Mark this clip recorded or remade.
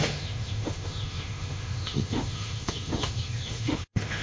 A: remade